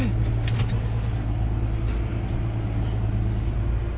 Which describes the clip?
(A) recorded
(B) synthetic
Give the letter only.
A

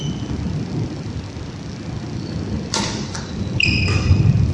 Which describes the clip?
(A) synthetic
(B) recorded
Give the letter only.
A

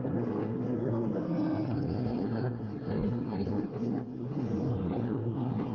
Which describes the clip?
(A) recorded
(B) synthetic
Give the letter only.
B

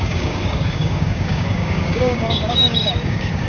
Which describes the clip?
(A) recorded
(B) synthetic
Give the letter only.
B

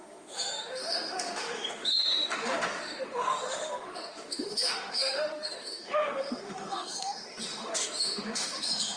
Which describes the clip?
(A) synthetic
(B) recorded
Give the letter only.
A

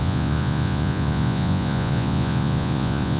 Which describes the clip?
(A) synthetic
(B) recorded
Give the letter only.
A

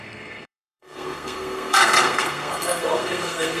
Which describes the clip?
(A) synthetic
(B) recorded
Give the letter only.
A